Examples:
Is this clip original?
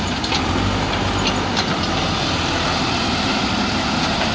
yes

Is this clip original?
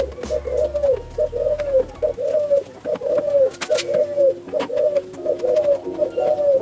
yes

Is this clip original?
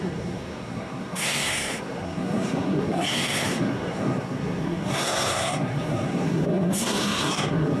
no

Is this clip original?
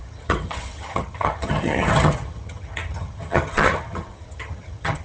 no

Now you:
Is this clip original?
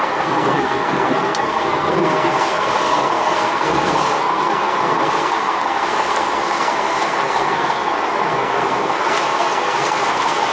no